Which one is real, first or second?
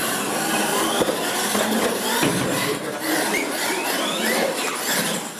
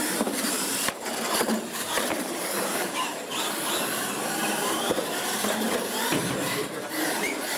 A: first